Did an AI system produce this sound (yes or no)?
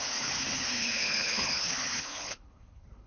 yes